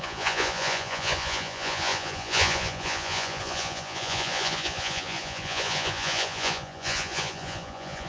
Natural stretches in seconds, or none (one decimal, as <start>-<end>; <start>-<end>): none